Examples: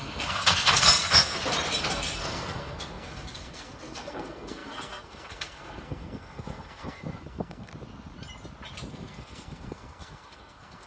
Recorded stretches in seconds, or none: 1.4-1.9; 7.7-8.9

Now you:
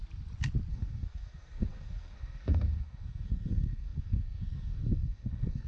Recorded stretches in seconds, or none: 0.0-0.7

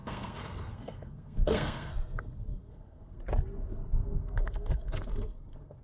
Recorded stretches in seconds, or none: 3.2-3.6

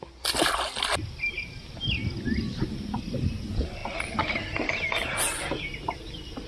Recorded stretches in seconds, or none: 0.0-6.5

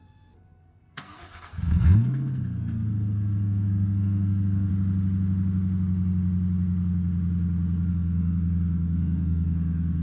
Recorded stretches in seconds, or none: 4.7-7.9

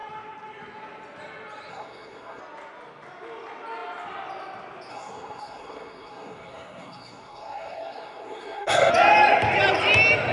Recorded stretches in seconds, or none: 0.0-1.7; 2.4-4.9; 8.9-10.3